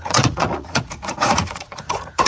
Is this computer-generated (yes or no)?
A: yes